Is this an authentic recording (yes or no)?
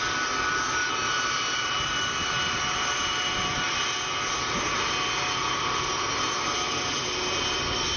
yes